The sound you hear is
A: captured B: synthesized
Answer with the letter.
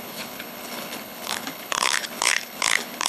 B